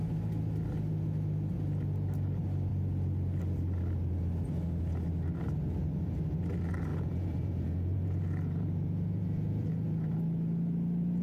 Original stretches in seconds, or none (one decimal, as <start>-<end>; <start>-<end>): 0.0-6.9; 10.2-11.2